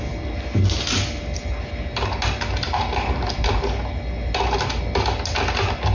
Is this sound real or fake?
real